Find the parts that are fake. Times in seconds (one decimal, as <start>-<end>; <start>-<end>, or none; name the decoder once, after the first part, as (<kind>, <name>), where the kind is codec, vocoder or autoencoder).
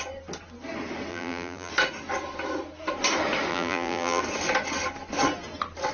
1.1-1.7 (vocoder, BigVGAN v2); 3.5-4.2